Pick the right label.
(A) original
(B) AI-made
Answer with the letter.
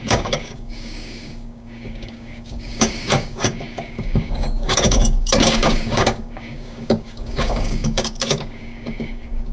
B